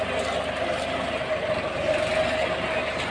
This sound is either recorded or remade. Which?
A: recorded